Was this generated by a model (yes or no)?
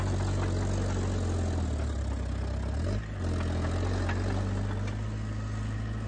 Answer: no